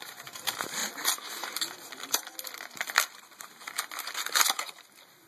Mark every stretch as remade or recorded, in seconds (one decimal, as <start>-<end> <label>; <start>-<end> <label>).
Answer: 0.0-5.3 remade